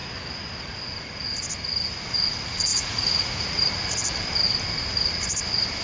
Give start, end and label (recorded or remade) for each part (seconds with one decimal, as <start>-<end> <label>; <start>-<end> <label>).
0.0-2.7 recorded; 2.7-3.7 remade; 3.7-5.8 recorded